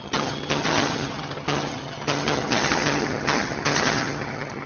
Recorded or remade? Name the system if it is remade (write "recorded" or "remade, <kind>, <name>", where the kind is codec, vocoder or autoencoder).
remade, vocoder, HiFi-GAN